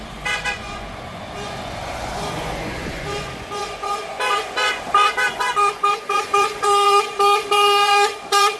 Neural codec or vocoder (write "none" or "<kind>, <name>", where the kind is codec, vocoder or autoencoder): vocoder, Vocos